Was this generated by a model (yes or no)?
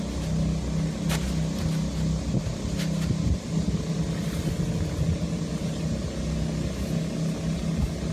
no